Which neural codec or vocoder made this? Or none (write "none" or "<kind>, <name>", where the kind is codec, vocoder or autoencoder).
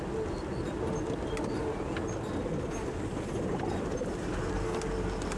none